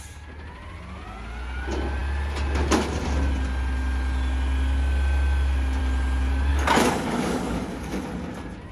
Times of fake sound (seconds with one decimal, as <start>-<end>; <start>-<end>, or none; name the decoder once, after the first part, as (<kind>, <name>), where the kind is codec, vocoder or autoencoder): 6.5-8.0 (codec, DAC)